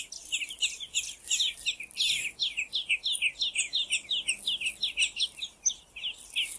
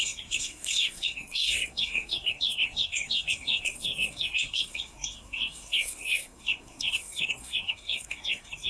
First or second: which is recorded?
first